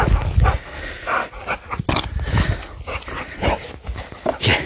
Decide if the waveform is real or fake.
real